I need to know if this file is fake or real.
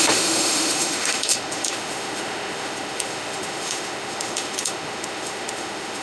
fake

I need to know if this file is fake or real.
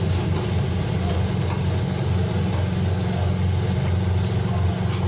real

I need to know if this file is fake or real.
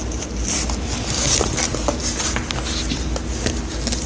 real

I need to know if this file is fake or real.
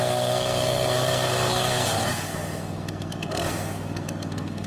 fake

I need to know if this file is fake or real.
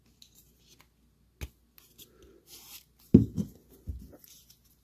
real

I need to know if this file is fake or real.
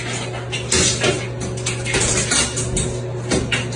real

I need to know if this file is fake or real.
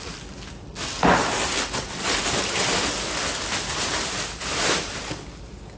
real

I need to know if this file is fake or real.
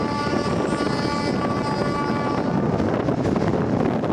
real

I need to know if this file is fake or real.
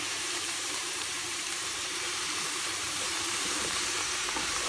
fake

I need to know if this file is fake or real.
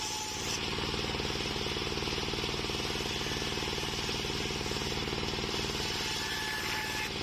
real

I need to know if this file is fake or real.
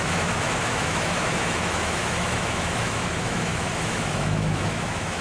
fake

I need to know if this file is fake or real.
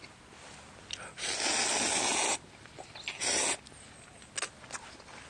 real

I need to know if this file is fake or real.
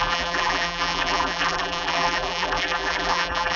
fake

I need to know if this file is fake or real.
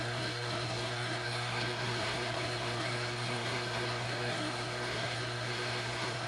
fake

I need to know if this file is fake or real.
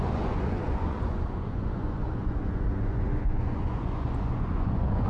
fake